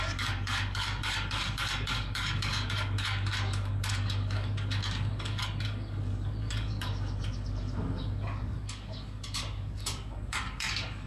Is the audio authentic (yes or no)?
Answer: no